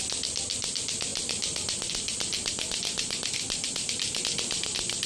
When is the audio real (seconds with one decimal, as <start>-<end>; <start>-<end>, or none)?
0.0-5.1